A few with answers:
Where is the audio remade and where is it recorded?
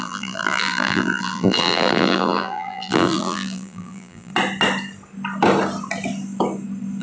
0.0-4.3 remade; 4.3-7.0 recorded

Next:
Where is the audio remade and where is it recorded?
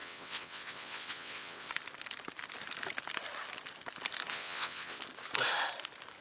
0.0-1.7 remade; 1.7-4.3 recorded; 4.3-5.0 remade; 5.0-6.2 recorded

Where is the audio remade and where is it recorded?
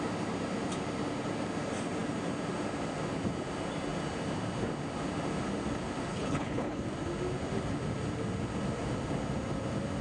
0.0-6.1 recorded; 6.1-6.8 remade; 6.8-10.0 recorded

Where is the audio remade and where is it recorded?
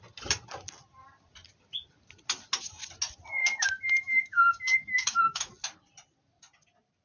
0.0-3.4 recorded; 3.4-5.5 remade; 5.5-7.0 recorded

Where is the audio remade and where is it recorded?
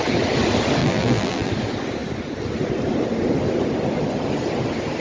0.0-0.8 recorded; 0.8-1.5 remade; 1.5-5.0 recorded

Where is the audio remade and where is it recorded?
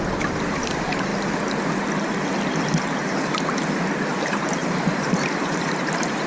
0.0-1.1 remade; 1.1-4.1 recorded; 4.1-6.3 remade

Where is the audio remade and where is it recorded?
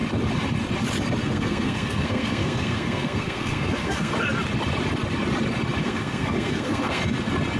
0.0-1.2 recorded; 1.2-4.1 remade; 4.1-5.8 recorded; 5.8-7.0 remade; 7.0-7.6 recorded